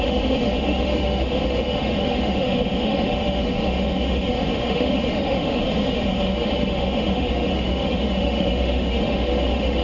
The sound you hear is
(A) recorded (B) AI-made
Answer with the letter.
B